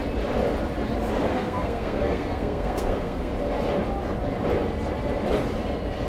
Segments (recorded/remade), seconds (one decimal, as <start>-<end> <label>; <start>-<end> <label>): 0.0-1.3 recorded; 1.3-3.3 remade; 3.3-6.1 recorded